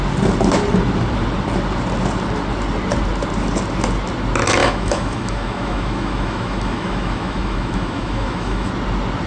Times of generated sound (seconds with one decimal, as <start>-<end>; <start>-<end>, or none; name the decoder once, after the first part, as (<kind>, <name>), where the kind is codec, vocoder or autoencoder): 4.6-8.7 (autoencoder, DAC-VAE)